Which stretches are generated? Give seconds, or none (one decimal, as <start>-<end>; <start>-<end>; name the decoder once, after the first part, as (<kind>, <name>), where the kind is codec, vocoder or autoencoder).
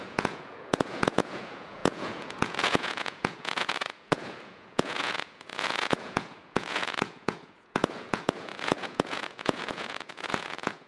0.0-10.9 (vocoder, Vocos)